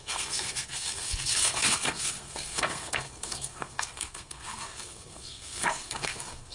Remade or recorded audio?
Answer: remade